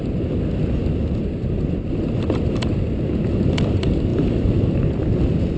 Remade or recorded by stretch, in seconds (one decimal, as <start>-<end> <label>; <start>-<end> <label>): 0.0-5.6 recorded

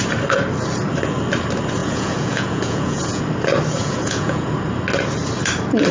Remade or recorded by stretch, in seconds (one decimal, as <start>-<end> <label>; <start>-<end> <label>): 0.0-1.8 recorded; 1.8-3.2 remade; 3.2-3.8 recorded; 3.8-4.5 remade; 4.5-5.9 recorded